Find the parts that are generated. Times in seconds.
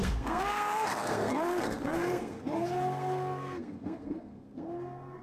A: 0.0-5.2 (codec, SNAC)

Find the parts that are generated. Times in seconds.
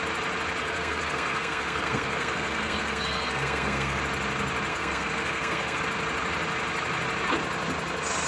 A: 0.6-4.0 (codec, SNAC); 4.7-5.8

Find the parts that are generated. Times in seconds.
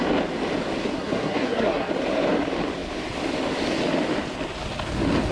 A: 0.8-1.9 (codec, SNAC)